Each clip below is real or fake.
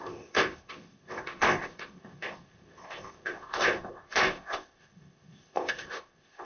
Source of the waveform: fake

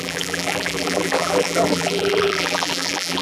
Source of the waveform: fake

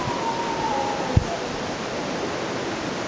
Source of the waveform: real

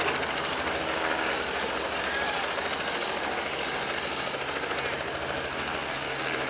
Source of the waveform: real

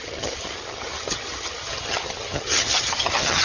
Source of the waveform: fake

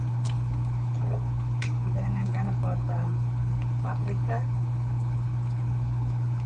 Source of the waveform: fake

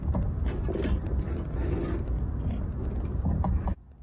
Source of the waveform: real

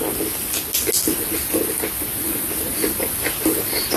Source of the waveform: real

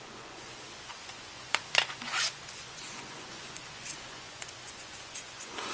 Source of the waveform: fake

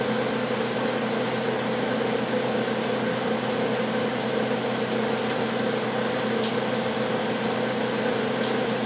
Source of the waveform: real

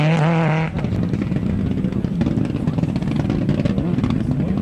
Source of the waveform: real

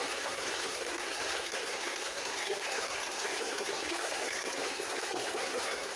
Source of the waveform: fake